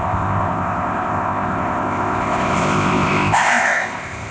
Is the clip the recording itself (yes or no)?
no